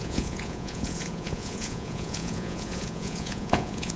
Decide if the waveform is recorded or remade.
remade